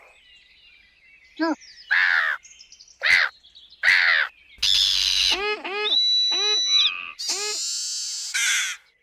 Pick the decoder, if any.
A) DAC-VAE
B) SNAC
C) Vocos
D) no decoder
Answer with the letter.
D